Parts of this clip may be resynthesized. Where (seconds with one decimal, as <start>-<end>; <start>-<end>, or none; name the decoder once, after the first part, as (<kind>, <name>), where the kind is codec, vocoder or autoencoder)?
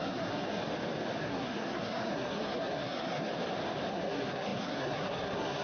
0.0-0.6 (codec, SNAC); 1.2-3.3; 3.9-5.6